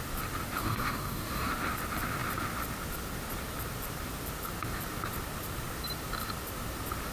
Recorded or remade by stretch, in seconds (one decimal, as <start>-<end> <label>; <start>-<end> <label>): 0.0-0.6 recorded; 0.6-1.5 remade; 1.5-7.1 recorded